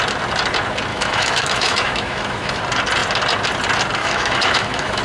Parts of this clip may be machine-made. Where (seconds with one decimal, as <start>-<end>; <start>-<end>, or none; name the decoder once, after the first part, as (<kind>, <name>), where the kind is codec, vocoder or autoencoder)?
0.9-2.6 (autoencoder, DAC-VAE); 4.0-5.0